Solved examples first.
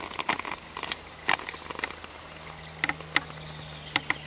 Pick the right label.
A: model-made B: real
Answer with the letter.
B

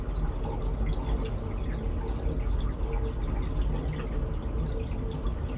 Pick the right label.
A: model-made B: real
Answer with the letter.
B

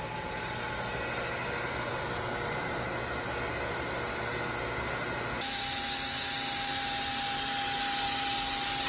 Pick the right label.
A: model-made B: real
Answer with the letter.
B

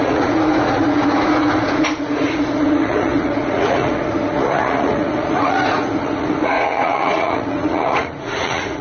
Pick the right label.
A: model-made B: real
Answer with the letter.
A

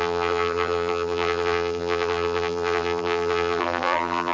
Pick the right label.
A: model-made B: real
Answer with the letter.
A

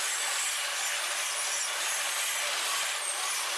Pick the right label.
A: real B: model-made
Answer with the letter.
A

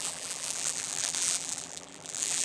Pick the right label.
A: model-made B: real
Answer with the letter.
A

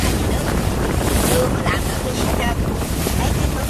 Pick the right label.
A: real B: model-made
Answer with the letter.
B